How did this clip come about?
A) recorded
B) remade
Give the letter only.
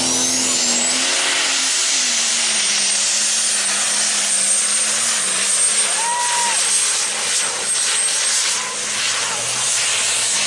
A